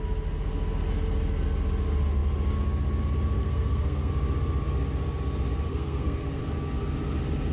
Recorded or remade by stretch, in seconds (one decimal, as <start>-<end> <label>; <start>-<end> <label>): 0.0-3.4 recorded; 3.4-4.1 remade; 4.1-5.7 recorded; 5.7-6.4 remade; 6.4-7.5 recorded